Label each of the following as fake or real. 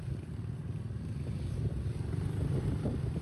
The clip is fake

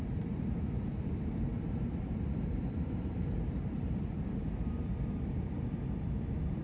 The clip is fake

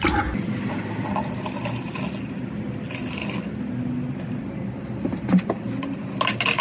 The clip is real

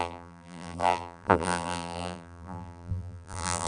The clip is fake